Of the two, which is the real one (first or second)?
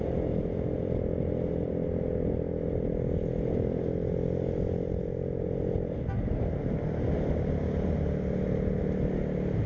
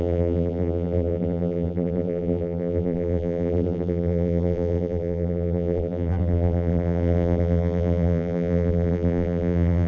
first